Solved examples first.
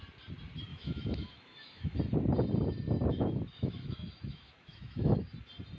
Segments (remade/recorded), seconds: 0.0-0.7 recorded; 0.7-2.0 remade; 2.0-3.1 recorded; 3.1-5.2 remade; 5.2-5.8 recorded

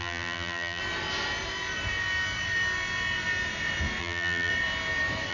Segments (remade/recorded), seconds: 0.0-0.8 remade; 0.8-4.0 recorded; 4.0-4.5 remade; 4.5-5.3 recorded

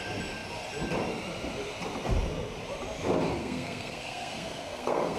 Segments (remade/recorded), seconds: 0.0-3.4 recorded; 3.4-5.2 remade

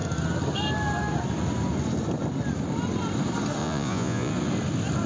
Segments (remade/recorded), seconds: 0.0-3.6 recorded; 3.6-4.3 remade; 4.3-5.1 recorded

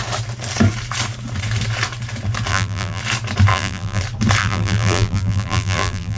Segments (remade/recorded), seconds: 0.0-2.5 recorded; 2.5-3.0 remade; 3.0-3.5 recorded; 3.5-4.0 remade; 4.0-4.4 recorded; 4.4-6.2 remade

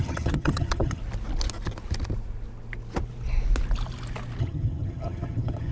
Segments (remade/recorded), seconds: 0.0-1.0 remade; 1.0-4.4 recorded; 4.4-5.7 remade